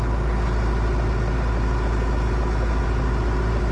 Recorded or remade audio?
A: recorded